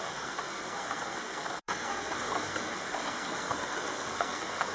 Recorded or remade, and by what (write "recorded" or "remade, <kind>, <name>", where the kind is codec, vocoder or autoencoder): remade, codec, SNAC